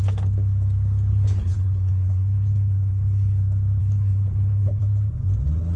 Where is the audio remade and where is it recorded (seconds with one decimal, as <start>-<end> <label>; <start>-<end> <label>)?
0.0-1.1 recorded; 1.1-3.4 remade; 3.4-3.8 recorded; 3.8-4.8 remade; 4.8-5.8 recorded